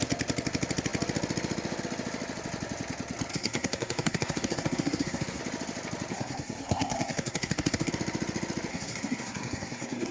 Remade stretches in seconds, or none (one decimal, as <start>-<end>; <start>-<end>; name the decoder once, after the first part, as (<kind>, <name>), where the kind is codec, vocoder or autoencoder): 3.3-5.4 (codec, SNAC); 6.1-7.9; 8.7-10.1